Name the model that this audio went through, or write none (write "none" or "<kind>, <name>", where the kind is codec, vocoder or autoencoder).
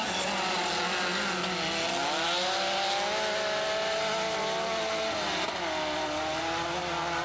none